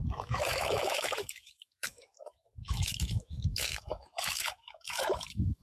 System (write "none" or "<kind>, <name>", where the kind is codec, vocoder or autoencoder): autoencoder, DAC-VAE